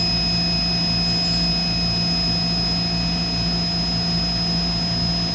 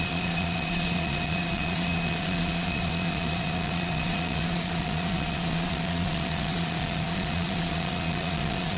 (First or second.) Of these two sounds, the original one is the first